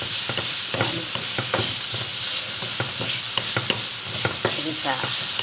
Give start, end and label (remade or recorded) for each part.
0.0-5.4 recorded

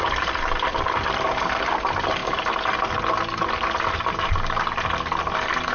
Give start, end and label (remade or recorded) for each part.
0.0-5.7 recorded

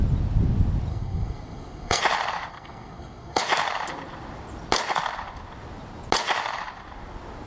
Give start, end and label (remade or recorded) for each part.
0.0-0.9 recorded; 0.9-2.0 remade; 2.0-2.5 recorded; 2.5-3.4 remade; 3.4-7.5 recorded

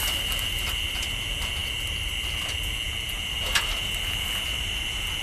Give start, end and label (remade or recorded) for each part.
0.0-5.2 recorded

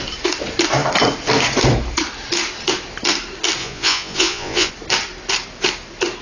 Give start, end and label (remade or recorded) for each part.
0.0-3.6 recorded; 3.6-4.7 remade; 4.7-6.2 recorded